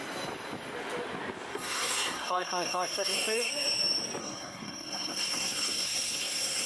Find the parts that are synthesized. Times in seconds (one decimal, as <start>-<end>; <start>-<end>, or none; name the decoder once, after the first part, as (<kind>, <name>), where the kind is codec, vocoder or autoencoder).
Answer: 1.5-3.5 (codec, SNAC); 4.2-6.7